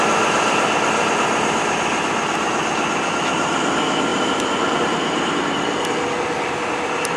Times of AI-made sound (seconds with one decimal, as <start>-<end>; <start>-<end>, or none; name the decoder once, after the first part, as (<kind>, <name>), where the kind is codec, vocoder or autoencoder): none